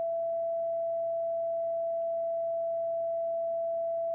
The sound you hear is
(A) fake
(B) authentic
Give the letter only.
B